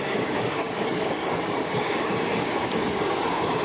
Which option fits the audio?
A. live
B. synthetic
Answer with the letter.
B